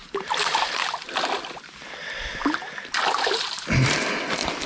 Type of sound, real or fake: real